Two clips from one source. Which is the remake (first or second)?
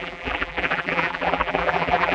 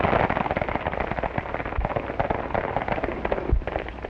first